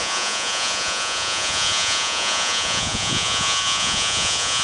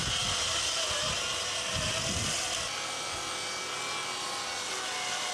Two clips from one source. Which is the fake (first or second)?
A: first